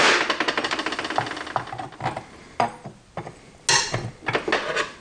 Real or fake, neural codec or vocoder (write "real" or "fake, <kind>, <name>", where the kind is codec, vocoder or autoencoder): real